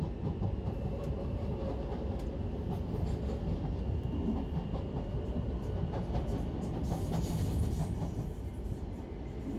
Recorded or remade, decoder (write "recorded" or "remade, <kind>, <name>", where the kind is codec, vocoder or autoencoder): recorded